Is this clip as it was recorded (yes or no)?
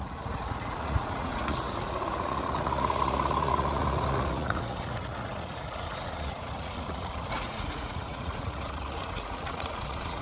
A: no